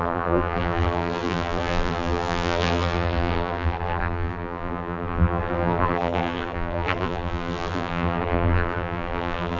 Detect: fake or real fake